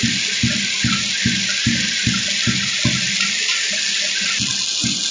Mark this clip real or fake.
real